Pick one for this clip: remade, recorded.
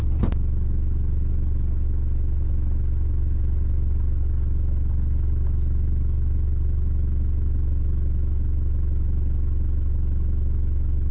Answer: recorded